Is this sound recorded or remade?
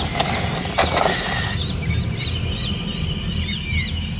recorded